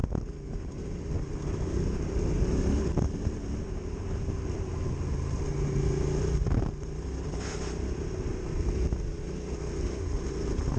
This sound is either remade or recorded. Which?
recorded